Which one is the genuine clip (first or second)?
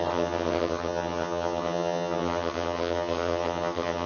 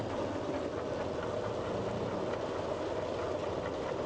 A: second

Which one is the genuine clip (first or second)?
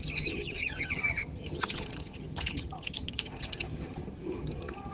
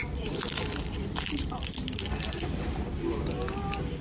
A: second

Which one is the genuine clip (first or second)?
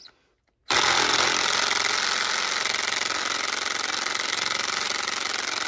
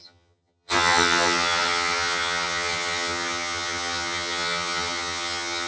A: first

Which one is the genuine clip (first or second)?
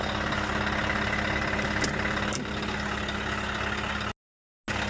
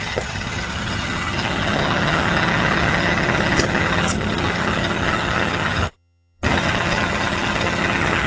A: first